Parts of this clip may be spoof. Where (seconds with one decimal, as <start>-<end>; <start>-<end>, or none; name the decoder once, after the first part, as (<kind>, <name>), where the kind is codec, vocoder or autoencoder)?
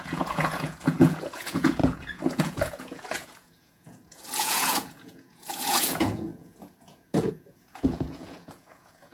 0.0-9.1 (vocoder, Vocos)